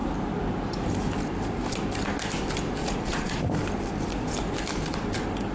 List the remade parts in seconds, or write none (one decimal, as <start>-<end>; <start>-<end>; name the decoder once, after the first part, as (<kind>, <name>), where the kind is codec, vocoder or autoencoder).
2.8-3.4 (vocoder, Vocos)